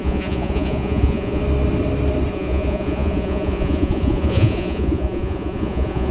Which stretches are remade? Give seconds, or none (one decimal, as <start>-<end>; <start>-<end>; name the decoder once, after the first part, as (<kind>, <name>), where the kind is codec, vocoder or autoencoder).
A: 0.0-1.4 (vocoder, Vocos); 2.3-6.1